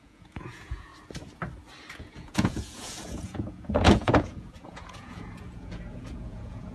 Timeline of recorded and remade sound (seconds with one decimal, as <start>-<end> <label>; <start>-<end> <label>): 0.0-0.9 remade; 0.9-2.0 recorded; 2.0-6.7 remade